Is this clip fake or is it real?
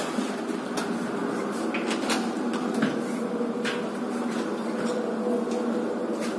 real